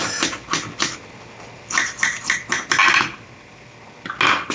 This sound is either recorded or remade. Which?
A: recorded